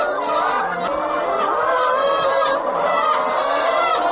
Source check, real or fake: real